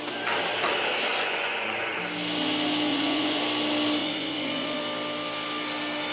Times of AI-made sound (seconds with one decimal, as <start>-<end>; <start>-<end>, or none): 1.1-1.9; 2.9-3.4; 4.0-4.8